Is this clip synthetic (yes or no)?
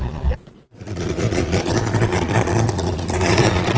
yes